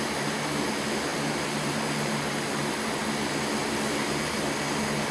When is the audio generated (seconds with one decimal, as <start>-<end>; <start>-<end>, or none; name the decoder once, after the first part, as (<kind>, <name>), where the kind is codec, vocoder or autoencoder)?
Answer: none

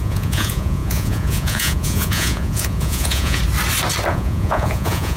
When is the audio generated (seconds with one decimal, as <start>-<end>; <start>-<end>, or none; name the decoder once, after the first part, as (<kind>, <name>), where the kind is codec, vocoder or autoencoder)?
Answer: 0.0-3.4 (vocoder, Vocos); 4.1-5.2

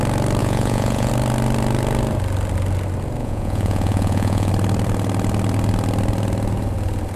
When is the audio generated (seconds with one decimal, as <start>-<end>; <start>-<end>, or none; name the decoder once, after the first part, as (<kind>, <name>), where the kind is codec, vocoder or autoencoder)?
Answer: 0.4-1.1 (vocoder, Vocos); 3.2-4.5

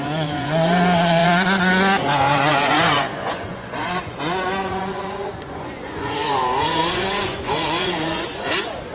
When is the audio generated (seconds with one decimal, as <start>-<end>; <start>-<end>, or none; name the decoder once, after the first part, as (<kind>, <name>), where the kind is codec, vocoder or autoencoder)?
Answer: 0.0-8.9 (vocoder, Vocos)

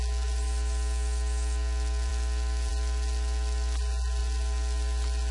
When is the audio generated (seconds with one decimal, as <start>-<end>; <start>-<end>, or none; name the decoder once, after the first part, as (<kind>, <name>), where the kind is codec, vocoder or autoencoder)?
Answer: none

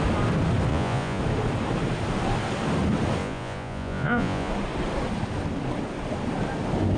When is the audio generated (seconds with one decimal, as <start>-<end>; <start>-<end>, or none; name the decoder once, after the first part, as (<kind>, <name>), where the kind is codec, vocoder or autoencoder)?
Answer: 0.7-1.2 (vocoder, Vocos); 3.2-4.5